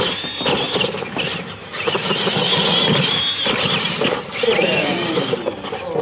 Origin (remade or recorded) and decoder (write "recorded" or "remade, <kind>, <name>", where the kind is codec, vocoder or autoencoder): recorded